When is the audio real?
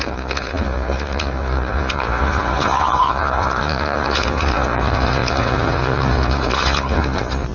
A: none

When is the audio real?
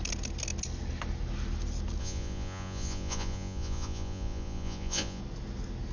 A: 0.0-2.0; 5.2-5.9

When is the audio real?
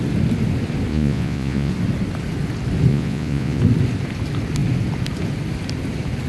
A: 0.0-0.9; 1.7-2.9; 3.6-6.3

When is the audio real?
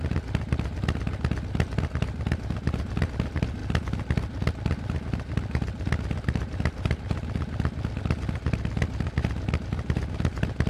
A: 0.0-10.7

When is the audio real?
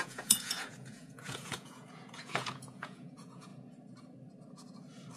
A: 3.5-5.2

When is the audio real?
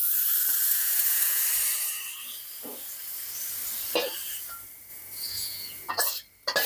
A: 0.0-0.7; 1.4-4.9; 5.9-6.7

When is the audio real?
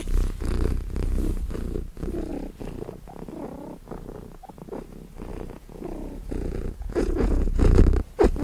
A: 0.0-5.3; 7.8-8.4